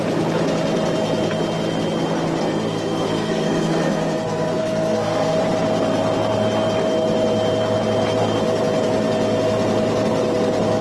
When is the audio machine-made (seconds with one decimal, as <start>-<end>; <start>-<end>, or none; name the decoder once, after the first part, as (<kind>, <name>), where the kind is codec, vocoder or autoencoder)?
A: 2.4-5.4 (codec, SNAC)